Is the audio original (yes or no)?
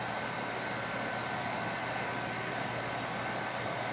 yes